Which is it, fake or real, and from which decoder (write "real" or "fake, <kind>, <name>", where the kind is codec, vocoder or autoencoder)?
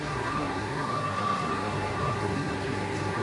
fake, codec, SNAC